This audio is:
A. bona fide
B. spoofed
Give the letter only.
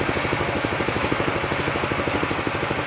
A